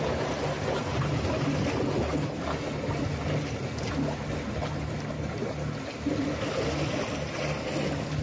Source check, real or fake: real